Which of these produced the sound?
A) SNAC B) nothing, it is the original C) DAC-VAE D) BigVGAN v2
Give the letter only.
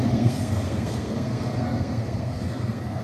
A